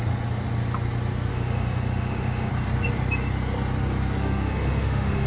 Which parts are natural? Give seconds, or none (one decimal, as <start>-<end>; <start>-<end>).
0.0-1.3; 2.5-4.2